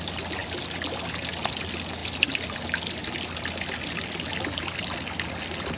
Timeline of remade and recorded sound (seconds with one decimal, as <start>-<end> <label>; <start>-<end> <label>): 0.0-5.8 recorded